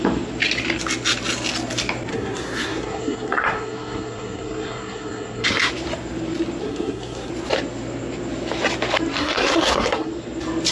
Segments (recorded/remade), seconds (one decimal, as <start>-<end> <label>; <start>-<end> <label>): 0.0-2.1 recorded; 2.1-5.7 remade; 5.7-6.6 recorded; 6.6-7.3 remade; 7.3-9.2 recorded; 9.2-10.1 remade; 10.1-10.7 recorded